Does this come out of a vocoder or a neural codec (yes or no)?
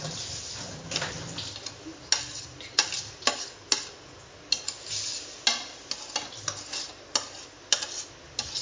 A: no